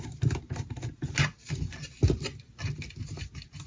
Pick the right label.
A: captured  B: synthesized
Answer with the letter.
A